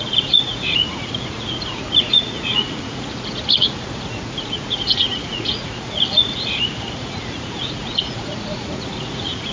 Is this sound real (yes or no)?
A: no